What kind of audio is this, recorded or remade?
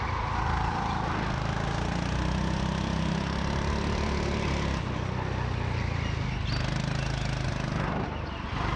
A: recorded